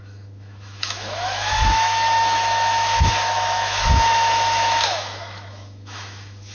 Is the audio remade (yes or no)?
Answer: yes